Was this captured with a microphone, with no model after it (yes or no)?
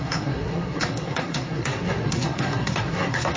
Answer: no